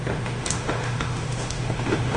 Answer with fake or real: fake